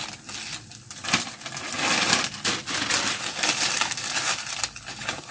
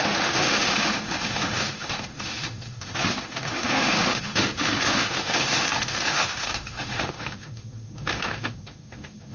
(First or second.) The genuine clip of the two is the first